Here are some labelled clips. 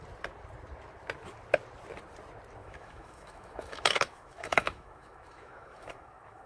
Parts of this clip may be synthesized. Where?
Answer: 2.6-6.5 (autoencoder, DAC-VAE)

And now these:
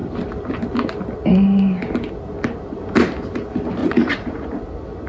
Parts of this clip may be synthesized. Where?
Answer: 3.8-4.6 (vocoder, Vocos)